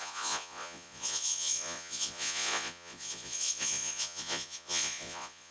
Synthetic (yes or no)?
yes